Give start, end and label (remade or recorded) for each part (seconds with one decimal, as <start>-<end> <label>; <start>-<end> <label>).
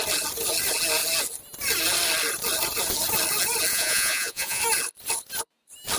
0.0-3.7 recorded; 3.7-4.6 remade; 4.6-6.0 recorded